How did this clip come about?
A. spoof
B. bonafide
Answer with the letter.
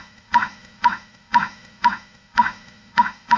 A